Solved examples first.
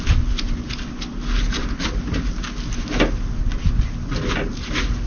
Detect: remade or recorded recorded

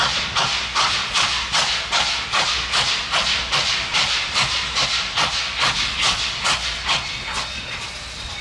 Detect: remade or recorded recorded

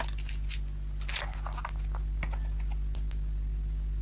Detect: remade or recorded recorded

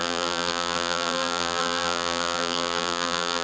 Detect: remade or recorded remade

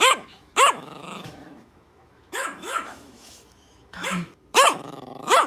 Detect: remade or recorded remade